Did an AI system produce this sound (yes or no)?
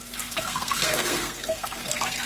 yes